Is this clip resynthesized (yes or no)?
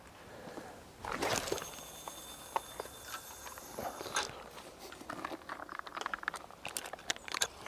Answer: no